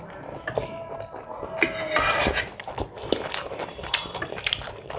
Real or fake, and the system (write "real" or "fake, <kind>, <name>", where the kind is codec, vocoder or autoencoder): real